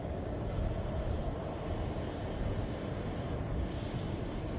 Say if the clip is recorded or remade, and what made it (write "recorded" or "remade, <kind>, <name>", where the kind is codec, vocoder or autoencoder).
recorded